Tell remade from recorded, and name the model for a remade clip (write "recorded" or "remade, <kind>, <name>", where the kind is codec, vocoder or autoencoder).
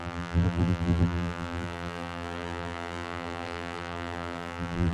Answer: remade, vocoder, BigVGAN v2